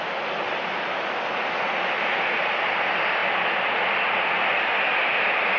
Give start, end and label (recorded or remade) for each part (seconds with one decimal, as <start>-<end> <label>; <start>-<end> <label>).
0.0-5.6 recorded